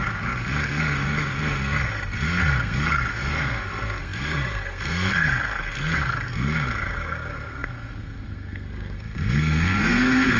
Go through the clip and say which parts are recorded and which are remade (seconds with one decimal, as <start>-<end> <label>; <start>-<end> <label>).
0.0-10.4 remade